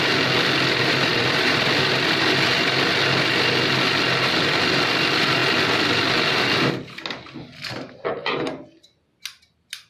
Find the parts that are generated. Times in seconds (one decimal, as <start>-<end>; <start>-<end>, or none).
1.1-1.8